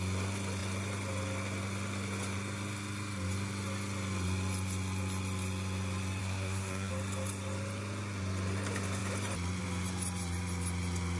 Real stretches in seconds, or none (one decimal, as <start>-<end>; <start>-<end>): 0.0-6.2; 6.9-11.2